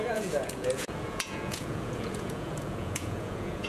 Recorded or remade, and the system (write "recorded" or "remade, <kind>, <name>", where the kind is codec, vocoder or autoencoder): remade, vocoder, Vocos